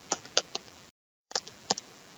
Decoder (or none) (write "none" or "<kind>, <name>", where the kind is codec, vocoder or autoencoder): vocoder, BigVGAN v2